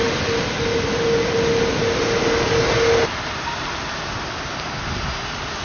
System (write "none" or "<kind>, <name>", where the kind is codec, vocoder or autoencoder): none